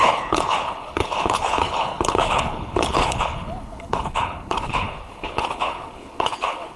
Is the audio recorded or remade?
remade